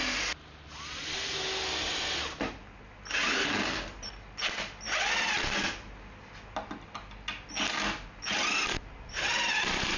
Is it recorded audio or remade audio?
recorded